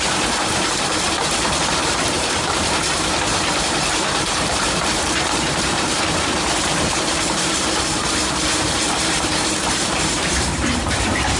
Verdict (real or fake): fake